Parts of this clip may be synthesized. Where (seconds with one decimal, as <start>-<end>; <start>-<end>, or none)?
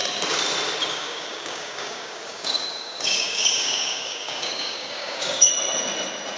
0.9-5.5